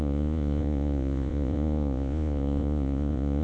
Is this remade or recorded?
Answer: remade